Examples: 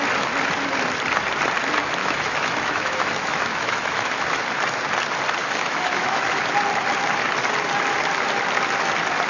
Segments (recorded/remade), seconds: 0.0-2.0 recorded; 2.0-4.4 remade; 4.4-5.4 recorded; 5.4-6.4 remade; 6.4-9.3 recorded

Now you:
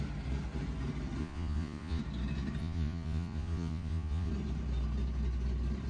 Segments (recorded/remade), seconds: 0.0-1.2 recorded; 1.2-2.0 remade; 2.0-2.6 recorded; 2.6-4.3 remade; 4.3-5.9 recorded

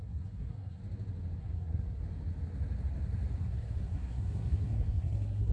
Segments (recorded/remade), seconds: 0.0-0.8 remade; 0.8-1.4 recorded; 1.4-2.0 remade; 2.0-3.4 recorded; 3.4-5.5 remade

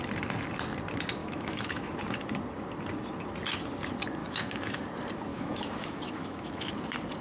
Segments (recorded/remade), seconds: 0.0-1.2 recorded; 1.2-1.9 remade; 1.9-4.2 recorded; 4.2-4.8 remade; 4.8-5.3 recorded; 5.3-6.7 remade; 6.7-7.2 recorded

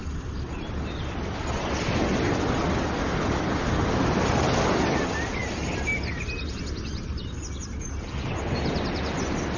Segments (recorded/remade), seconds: 0.0-9.6 recorded

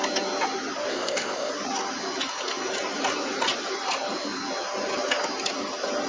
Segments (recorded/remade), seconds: 0.0-0.9 recorded; 0.9-1.5 remade; 1.5-6.1 recorded

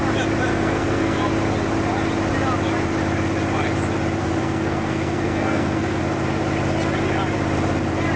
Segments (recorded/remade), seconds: 0.0-0.5 recorded; 0.5-1.2 remade; 1.2-4.2 recorded; 4.2-6.0 remade; 6.0-8.2 recorded

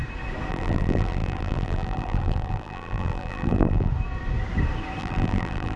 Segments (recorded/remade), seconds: 0.0-0.5 recorded; 0.5-3.9 remade; 3.9-5.0 recorded; 5.0-5.8 remade